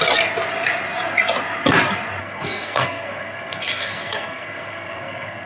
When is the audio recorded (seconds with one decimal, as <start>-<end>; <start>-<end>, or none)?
0.0-2.2